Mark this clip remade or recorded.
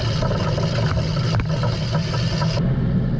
recorded